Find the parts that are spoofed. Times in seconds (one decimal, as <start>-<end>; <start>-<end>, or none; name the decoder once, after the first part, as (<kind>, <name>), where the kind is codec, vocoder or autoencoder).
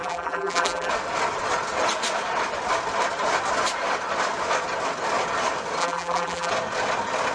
0.0-0.9 (vocoder, BigVGAN v2); 5.8-6.5